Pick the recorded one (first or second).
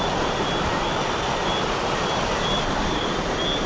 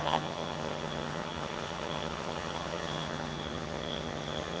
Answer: first